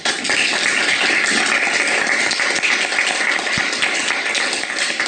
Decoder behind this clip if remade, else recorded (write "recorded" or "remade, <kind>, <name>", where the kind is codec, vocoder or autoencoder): recorded